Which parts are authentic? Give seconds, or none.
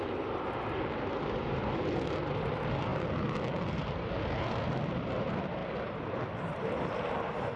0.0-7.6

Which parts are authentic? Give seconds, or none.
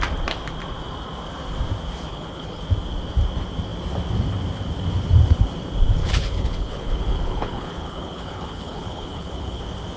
0.0-2.1; 2.6-6.0; 9.6-10.0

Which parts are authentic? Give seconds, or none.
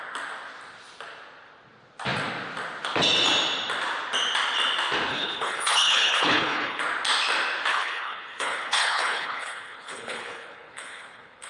0.0-5.1; 6.8-7.7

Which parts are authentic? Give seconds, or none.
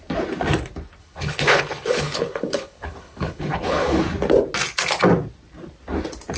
0.0-1.0; 4.0-6.4